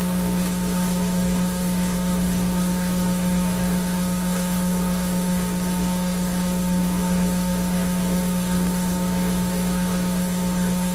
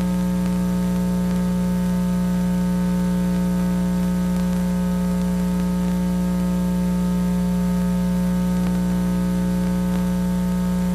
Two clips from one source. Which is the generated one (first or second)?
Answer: first